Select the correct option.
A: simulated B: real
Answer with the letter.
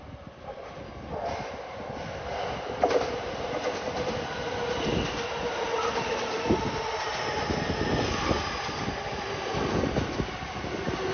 B